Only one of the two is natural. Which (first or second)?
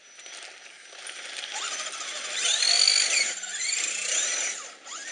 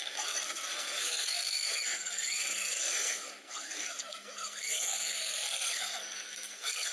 first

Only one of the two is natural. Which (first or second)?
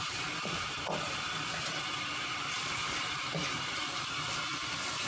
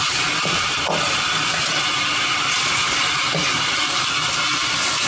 second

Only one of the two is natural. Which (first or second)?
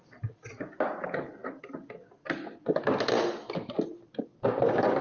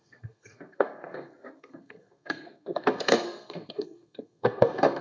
first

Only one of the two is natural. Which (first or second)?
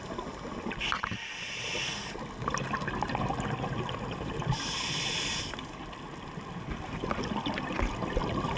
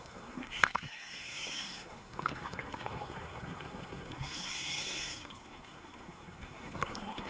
first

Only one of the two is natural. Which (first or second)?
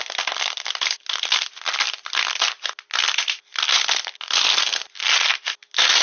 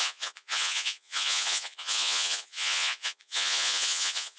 first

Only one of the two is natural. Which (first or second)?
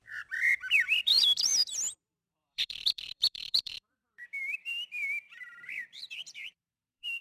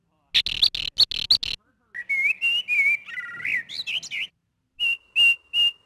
second